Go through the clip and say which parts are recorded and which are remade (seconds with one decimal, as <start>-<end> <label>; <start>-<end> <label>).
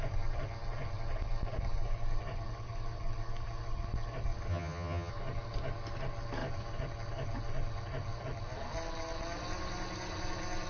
0.0-4.5 recorded; 4.5-5.1 remade; 5.1-10.7 recorded